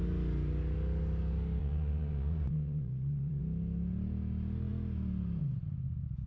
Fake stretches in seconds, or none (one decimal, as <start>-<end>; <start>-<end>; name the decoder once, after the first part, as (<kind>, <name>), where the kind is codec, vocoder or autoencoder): 1.6-3.4 (vocoder, Vocos)